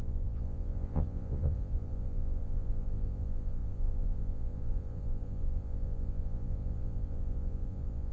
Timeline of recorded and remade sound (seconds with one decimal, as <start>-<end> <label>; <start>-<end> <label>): 0.0-8.1 remade